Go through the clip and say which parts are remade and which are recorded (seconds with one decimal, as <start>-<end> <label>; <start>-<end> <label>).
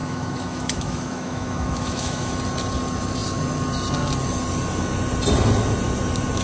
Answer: 0.0-2.3 remade; 2.3-6.4 recorded